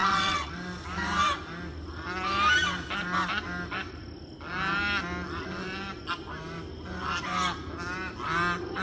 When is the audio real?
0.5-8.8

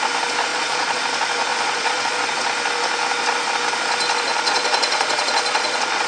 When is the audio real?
0.0-0.5; 1.0-1.5; 2.2-4.3